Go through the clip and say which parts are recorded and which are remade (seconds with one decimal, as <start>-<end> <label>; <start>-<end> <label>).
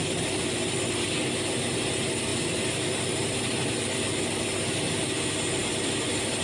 0.0-6.4 recorded